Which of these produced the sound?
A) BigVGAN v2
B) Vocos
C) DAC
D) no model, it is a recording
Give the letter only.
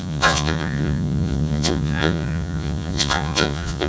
B